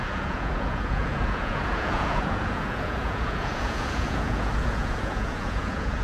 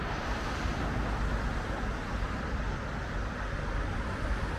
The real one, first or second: second